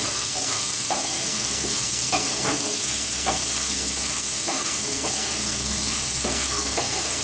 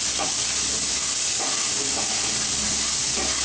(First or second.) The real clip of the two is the second